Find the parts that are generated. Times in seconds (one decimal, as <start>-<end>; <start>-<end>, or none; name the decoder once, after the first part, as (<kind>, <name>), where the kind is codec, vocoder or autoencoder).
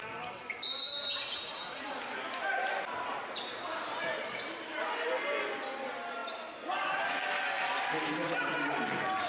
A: none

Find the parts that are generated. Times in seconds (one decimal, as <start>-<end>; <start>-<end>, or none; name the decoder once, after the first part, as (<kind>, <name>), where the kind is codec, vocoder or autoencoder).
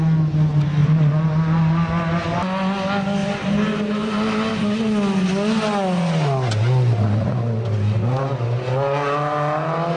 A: 0.8-1.3 (vocoder, BigVGAN v2); 3.2-4.5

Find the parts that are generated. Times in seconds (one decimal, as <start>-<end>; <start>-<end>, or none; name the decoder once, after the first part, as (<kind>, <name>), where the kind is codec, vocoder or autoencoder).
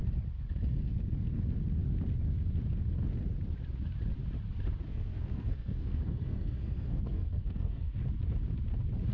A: 4.9-7.9 (codec, SNAC)